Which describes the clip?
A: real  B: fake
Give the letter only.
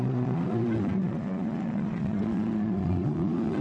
B